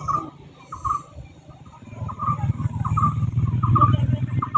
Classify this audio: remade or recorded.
recorded